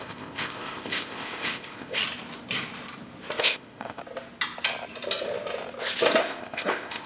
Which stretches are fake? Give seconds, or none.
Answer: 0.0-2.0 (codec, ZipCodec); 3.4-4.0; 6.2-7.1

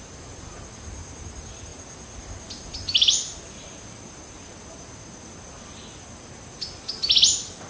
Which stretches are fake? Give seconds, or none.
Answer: none

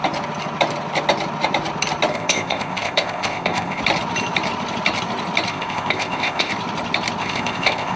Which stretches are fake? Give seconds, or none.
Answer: 2.1-3.8 (codec, ZipCodec); 5.5-6.5; 7.2-8.0

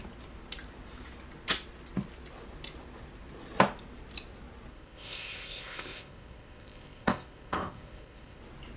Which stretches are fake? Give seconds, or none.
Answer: 4.7-8.4 (codec, ZipCodec)

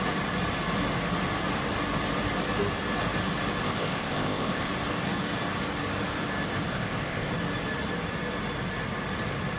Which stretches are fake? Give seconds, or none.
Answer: 3.6-4.7 (codec, ZipCodec); 6.7-7.3

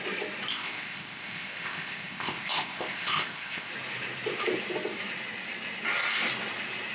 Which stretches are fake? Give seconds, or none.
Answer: 0.5-3.7 (codec, ZipCodec)

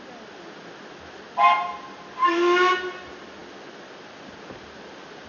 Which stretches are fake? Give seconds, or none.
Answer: none

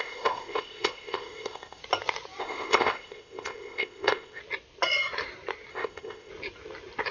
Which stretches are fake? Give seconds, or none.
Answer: 0.0-1.8 (codec, ZipCodec); 2.4-4.4; 5.7-6.3